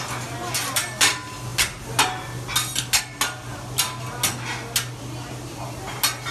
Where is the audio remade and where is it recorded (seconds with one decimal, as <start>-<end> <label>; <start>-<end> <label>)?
0.0-0.6 recorded; 0.6-1.1 remade; 1.1-6.3 recorded